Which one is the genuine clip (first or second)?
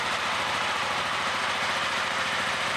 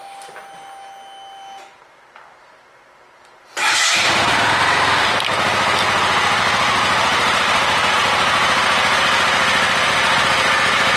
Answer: second